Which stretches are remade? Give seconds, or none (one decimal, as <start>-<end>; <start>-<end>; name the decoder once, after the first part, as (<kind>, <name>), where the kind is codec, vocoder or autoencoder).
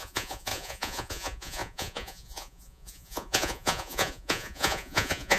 0.0-5.4 (vocoder, Vocos)